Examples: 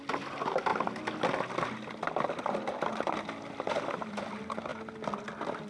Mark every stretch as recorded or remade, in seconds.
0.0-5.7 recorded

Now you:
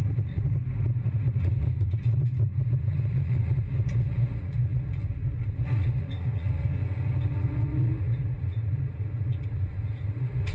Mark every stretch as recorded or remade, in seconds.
0.0-0.6 remade; 0.6-1.1 recorded; 1.1-10.5 remade